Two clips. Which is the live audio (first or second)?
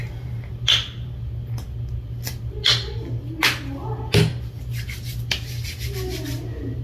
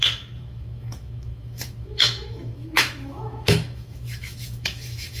first